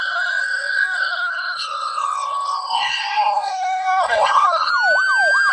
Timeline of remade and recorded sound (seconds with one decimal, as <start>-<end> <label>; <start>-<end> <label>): 0.0-4.7 remade; 4.7-5.5 recorded

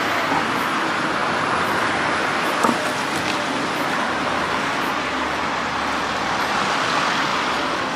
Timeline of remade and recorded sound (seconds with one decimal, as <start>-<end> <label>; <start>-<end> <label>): 0.0-8.0 recorded

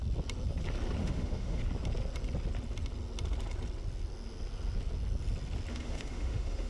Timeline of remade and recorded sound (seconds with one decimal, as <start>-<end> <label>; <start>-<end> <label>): 0.0-1.0 recorded; 1.0-1.6 remade; 1.6-5.7 recorded; 5.7-6.7 remade

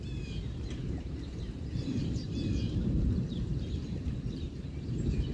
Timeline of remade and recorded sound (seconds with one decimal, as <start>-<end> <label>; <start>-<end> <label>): 0.0-5.3 remade